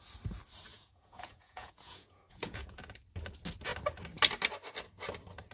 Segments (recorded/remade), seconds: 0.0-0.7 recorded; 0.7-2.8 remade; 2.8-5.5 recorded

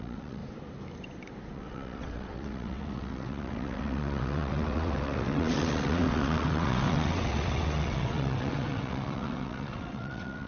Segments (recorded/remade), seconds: 0.0-0.4 remade; 0.4-1.5 recorded; 1.5-10.5 remade

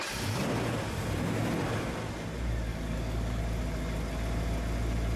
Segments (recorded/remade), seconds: 0.0-2.7 recorded; 2.7-3.4 remade; 3.4-5.2 recorded

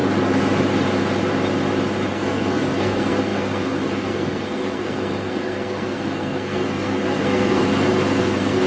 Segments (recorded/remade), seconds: 0.0-2.1 recorded; 2.1-7.7 remade; 7.7-8.2 recorded; 8.2-8.7 remade

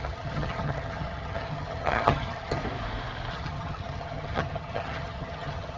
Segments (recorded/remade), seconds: 0.0-2.6 remade; 2.6-3.3 recorded; 3.3-5.8 remade